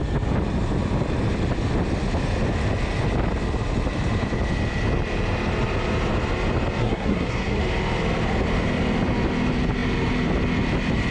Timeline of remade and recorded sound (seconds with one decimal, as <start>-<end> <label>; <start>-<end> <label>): 0.0-6.8 recorded; 6.8-7.6 remade; 7.6-11.1 recorded